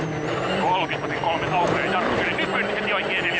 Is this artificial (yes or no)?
no